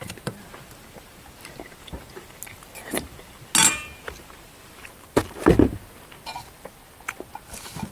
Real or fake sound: real